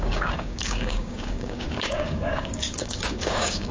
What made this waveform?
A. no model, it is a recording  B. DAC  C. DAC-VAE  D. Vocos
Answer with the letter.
B